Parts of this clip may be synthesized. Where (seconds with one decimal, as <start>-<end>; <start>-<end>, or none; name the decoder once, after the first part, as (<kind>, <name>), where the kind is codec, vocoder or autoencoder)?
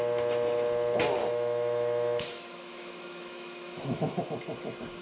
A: 1.2-4.2 (autoencoder, DAC-VAE)